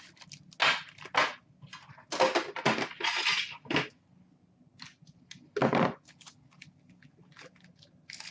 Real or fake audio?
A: real